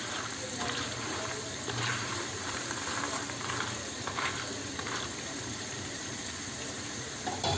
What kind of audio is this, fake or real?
fake